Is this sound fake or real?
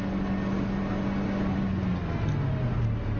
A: real